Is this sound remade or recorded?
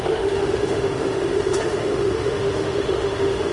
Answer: remade